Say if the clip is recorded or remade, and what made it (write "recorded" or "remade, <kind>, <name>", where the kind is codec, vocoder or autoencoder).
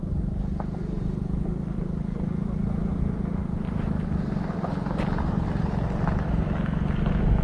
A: recorded